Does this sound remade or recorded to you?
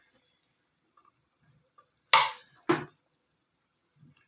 recorded